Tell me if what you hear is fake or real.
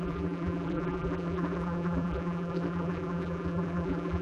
fake